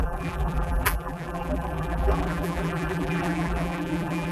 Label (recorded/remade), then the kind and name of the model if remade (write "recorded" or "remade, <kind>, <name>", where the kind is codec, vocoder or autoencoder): remade, vocoder, BigVGAN v2